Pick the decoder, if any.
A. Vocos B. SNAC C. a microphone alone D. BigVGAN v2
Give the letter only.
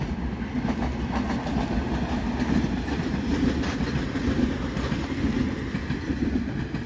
C